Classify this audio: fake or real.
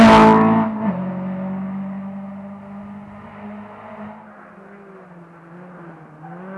real